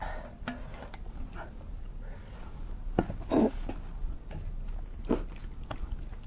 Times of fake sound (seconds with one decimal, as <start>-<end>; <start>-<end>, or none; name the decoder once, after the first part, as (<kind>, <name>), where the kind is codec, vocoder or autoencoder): none